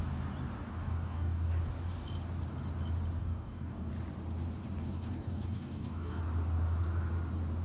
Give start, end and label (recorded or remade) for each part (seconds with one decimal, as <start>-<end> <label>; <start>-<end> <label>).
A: 0.0-0.8 recorded; 0.8-1.5 remade; 1.5-3.2 recorded; 3.2-3.9 remade; 3.9-4.8 recorded; 4.8-6.2 remade; 6.2-7.6 recorded

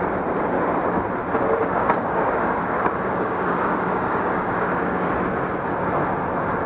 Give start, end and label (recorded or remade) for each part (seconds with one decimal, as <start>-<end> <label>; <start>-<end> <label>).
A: 0.0-1.6 recorded; 1.6-5.1 remade; 5.1-6.7 recorded

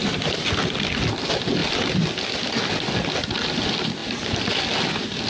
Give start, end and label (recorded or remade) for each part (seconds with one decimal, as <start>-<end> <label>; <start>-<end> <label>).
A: 0.0-5.3 recorded

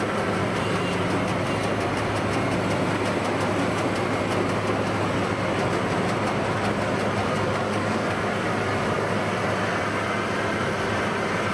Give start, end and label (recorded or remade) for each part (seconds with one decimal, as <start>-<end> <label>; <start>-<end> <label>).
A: 0.0-7.2 recorded; 7.2-8.5 remade; 8.5-11.5 recorded

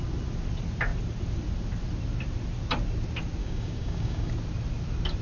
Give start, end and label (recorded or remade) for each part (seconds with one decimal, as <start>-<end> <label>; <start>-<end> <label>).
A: 0.0-3.4 recorded; 3.4-4.3 remade; 4.3-5.2 recorded

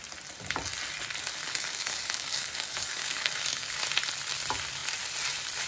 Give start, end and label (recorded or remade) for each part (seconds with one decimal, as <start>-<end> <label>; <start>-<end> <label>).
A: 0.0-1.4 recorded; 1.4-3.7 remade; 3.7-5.7 recorded

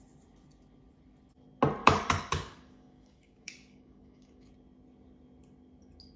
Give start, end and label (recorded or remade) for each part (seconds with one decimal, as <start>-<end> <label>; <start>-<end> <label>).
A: 0.0-1.8 recorded; 1.8-4.5 remade; 4.5-6.2 recorded